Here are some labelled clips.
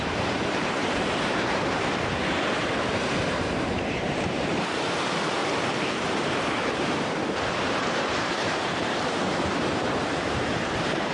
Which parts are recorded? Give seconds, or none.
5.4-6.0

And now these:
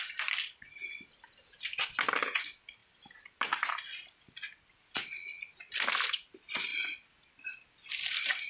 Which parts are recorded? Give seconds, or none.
0.0-8.5

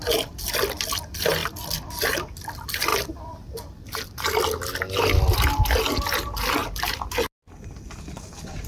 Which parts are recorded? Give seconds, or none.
0.0-8.7

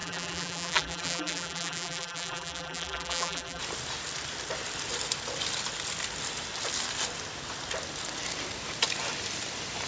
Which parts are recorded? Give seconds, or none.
3.6-9.9

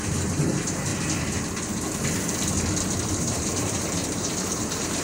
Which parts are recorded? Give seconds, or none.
0.9-3.2

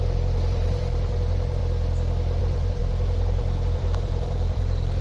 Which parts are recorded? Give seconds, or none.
1.6-2.4